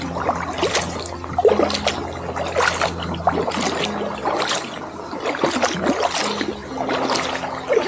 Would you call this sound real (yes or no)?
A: yes